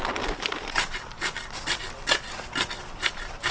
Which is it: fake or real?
real